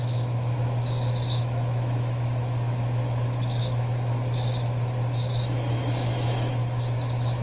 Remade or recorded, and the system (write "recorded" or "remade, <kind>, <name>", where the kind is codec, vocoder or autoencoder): remade, autoencoder, DAC-VAE